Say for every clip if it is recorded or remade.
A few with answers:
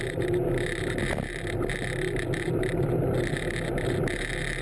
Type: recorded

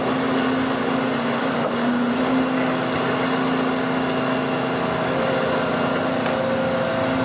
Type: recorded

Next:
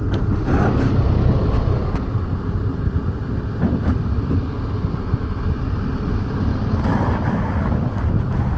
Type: recorded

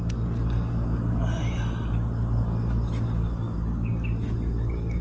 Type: recorded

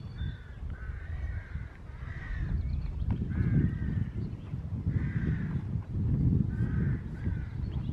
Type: recorded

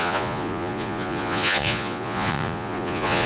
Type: remade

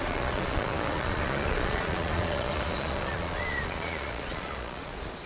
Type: remade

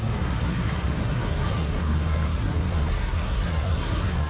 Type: remade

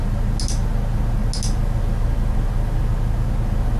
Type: recorded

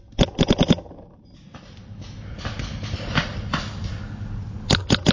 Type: recorded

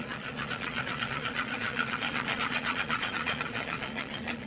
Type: remade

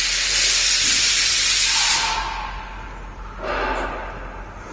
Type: recorded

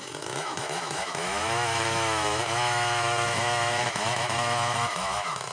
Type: remade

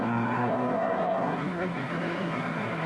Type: remade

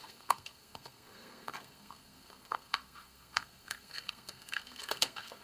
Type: remade